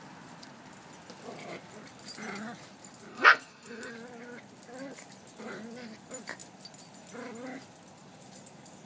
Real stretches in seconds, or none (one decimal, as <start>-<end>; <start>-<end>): 0.0-3.1; 3.9-8.9